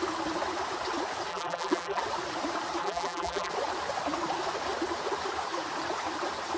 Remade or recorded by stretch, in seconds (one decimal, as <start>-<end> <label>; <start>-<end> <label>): 0.0-1.3 recorded; 1.3-2.0 remade; 2.0-2.8 recorded; 2.8-3.5 remade; 3.5-6.6 recorded